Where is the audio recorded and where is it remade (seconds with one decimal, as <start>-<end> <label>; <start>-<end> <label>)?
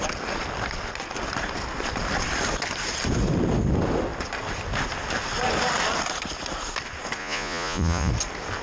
0.0-7.2 recorded; 7.2-8.1 remade; 8.1-8.6 recorded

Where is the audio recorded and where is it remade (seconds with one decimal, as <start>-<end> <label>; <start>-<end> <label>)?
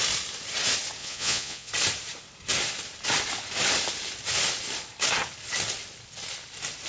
0.0-1.0 recorded; 1.0-1.7 remade; 1.7-6.9 recorded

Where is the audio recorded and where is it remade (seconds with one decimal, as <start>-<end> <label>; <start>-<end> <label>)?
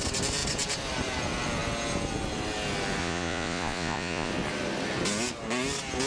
0.0-3.0 recorded; 3.0-4.3 remade; 4.3-6.1 recorded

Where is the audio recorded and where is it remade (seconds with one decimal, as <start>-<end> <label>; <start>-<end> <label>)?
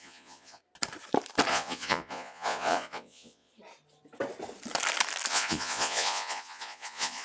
0.0-0.6 remade; 0.6-1.5 recorded; 1.5-3.5 remade; 3.5-5.3 recorded; 5.3-7.2 remade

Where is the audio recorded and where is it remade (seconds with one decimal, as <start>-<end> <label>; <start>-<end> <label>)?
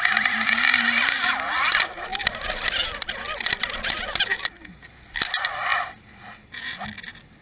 0.0-7.4 recorded